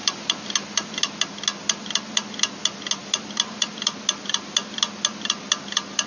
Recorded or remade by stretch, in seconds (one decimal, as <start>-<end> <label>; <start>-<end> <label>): 0.0-6.1 recorded